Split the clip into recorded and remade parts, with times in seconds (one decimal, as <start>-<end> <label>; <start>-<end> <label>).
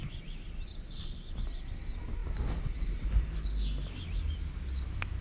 0.0-5.2 recorded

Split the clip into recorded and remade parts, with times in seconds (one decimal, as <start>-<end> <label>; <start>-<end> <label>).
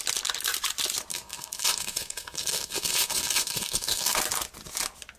0.0-1.1 recorded; 1.1-4.2 remade; 4.2-5.2 recorded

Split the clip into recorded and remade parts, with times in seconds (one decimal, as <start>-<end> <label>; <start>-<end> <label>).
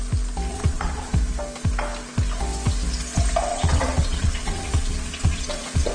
0.0-0.5 recorded; 0.5-1.1 remade; 1.1-3.5 recorded; 3.5-5.9 remade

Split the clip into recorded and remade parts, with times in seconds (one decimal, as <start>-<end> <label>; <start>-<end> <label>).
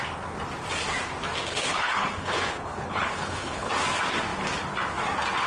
0.0-1.5 recorded; 1.5-3.7 remade; 3.7-5.5 recorded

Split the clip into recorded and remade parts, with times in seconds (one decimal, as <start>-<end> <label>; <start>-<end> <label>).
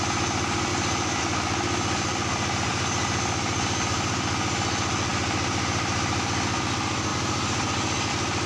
0.0-8.5 recorded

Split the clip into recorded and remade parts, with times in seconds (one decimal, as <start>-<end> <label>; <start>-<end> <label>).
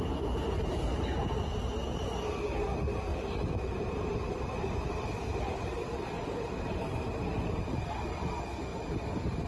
0.0-3.1 recorded; 3.1-7.6 remade; 7.6-9.5 recorded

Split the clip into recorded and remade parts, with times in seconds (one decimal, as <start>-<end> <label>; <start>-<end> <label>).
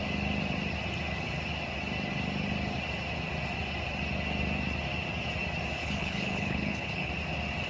0.0-5.8 recorded; 5.8-7.1 remade; 7.1-7.7 recorded